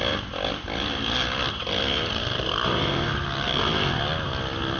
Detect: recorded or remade recorded